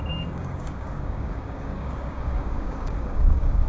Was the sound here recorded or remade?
remade